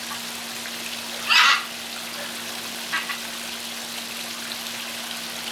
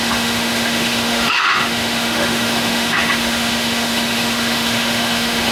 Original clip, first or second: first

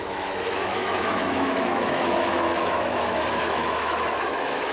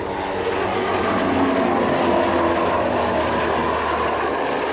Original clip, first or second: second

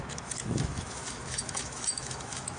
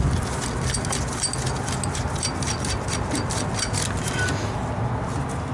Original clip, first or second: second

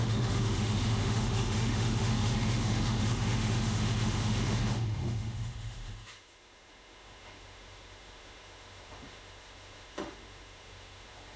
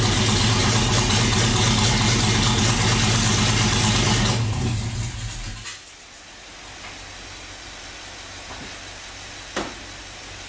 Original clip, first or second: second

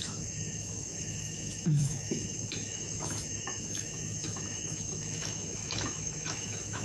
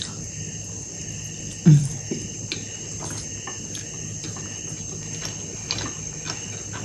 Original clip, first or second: second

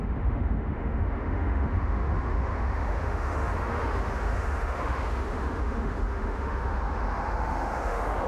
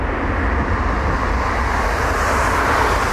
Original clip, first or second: second